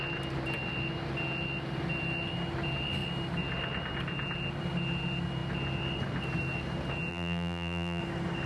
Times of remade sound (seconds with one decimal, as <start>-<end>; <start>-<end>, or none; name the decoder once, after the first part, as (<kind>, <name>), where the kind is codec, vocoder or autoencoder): 7.1-8.0 (vocoder, BigVGAN v2)